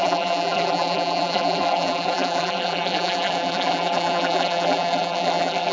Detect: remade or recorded remade